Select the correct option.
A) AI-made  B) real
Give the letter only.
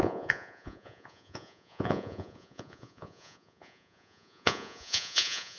A